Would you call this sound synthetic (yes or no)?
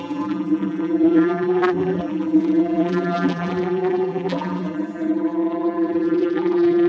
yes